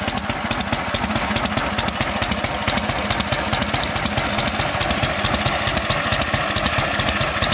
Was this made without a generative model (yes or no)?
yes